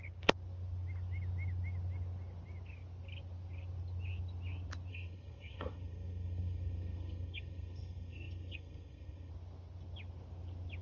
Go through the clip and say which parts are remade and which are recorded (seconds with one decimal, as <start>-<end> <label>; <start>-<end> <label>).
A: 0.0-4.9 recorded; 4.9-9.3 remade; 9.3-10.8 recorded